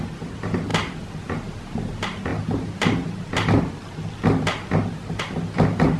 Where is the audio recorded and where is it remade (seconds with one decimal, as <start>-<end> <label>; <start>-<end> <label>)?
0.0-6.0 recorded